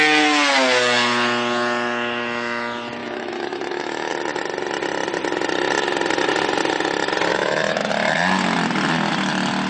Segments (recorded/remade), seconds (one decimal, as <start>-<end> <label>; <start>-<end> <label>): 0.0-3.0 recorded; 3.0-4.1 remade; 4.1-7.3 recorded; 7.3-7.9 remade; 7.9-9.7 recorded